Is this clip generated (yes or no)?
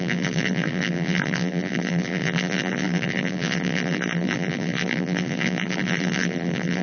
yes